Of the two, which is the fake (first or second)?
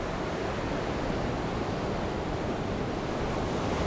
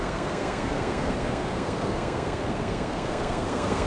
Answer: second